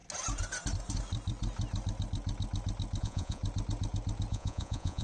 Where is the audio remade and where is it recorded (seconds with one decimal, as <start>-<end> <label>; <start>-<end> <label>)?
0.0-3.0 recorded; 3.0-3.4 remade; 3.4-4.3 recorded; 4.3-5.0 remade